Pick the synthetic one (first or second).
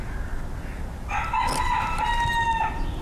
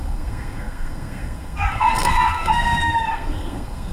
second